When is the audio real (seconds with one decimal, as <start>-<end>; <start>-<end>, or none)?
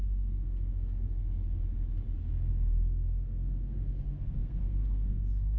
1.4-2.5